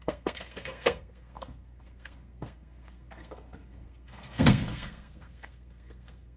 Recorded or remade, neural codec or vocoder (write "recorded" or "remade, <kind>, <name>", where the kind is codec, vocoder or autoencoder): remade, codec, SNAC